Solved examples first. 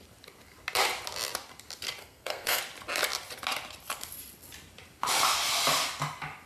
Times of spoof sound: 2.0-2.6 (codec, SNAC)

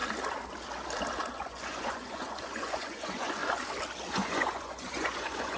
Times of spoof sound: 1.4-3.4 (vocoder, Vocos); 4.1-5.6